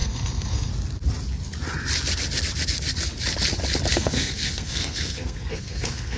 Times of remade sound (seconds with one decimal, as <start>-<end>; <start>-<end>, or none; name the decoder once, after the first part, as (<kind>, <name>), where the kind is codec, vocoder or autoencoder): 0.0-0.7 (codec, SNAC); 3.9-6.2